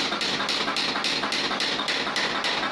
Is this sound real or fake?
real